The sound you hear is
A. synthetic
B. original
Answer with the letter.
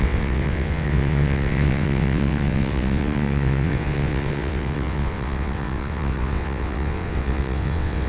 A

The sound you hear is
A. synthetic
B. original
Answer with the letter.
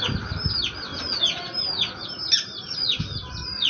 B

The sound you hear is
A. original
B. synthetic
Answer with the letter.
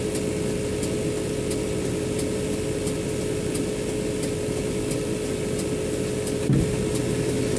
A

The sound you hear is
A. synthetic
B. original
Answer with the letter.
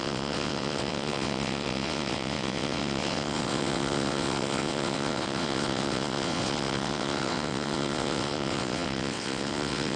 A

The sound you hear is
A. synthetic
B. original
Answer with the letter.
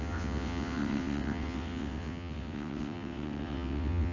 A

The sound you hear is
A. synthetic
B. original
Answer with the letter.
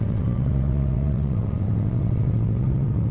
A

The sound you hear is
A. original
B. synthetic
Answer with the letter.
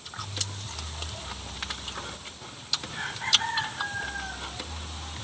A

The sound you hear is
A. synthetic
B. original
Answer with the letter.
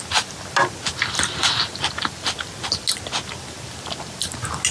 B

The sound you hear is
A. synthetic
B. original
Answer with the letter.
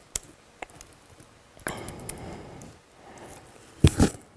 B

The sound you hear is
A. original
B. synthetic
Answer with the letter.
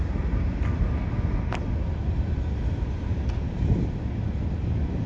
A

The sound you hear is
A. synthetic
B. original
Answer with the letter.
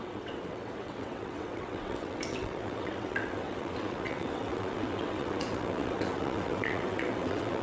A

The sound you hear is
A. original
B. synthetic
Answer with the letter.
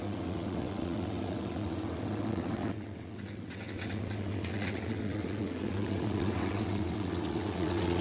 B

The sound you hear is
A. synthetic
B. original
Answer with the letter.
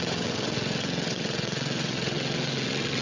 A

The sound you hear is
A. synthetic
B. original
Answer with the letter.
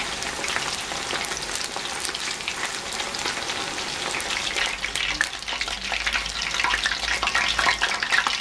B